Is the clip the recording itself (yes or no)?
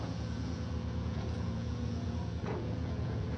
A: no